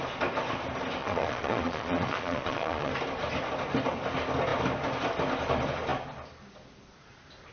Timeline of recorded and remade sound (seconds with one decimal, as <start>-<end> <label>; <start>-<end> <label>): 0.0-1.0 recorded; 1.0-2.9 remade; 2.9-7.5 recorded